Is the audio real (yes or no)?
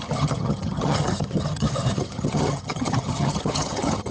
no